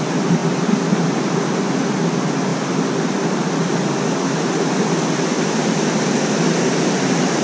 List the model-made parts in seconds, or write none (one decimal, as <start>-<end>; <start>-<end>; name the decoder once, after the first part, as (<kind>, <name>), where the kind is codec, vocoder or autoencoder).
none